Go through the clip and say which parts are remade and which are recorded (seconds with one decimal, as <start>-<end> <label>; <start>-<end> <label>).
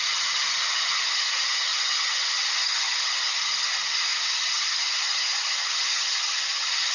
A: 0.0-6.9 remade